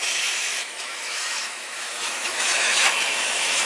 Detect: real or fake fake